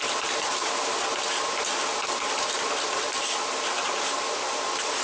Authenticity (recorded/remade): recorded